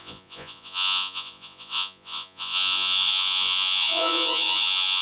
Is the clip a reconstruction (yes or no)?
yes